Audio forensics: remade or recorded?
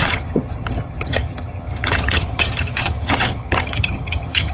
remade